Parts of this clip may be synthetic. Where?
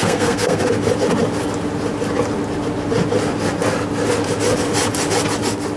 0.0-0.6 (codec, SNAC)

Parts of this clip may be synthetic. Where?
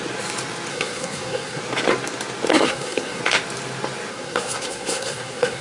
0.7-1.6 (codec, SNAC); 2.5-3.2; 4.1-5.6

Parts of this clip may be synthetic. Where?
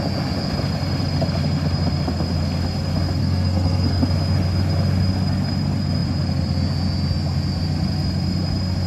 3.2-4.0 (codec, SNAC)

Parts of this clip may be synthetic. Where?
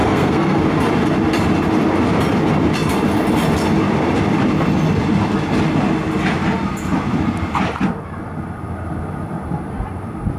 0.0-0.6 (codec, SNAC)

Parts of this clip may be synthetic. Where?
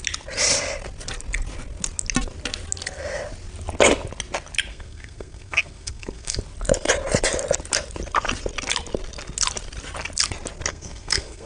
4.7-6.4 (codec, SNAC); 10.7-11.5